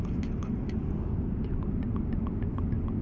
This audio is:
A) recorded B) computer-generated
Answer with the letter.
A